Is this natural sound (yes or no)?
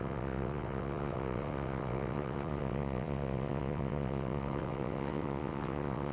no